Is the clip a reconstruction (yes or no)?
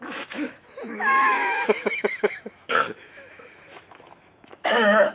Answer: yes